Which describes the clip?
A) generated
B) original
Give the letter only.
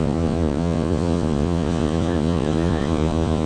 A